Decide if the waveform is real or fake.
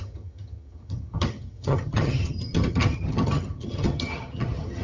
fake